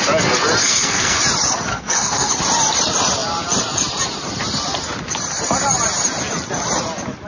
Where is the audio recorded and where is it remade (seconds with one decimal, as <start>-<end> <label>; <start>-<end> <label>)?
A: 0.0-0.6 recorded; 0.6-1.2 remade; 1.2-1.7 recorded; 1.7-2.3 remade; 2.3-7.3 recorded